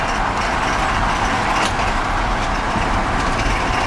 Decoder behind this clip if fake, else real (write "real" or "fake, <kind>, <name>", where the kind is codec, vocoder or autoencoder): real